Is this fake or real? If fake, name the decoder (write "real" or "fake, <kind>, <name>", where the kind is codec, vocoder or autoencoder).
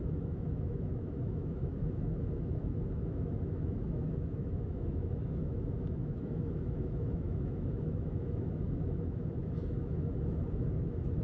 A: fake, autoencoder, DAC-VAE